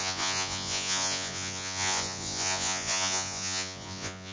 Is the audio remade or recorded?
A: remade